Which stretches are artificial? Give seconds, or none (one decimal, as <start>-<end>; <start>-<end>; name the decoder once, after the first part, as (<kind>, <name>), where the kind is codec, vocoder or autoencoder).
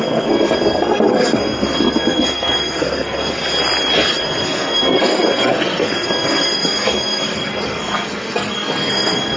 0.0-3.4 (codec, SNAC); 4.1-9.4